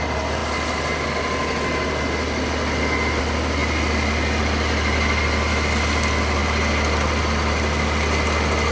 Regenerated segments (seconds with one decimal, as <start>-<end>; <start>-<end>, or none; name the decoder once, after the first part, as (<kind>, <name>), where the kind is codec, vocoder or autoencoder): none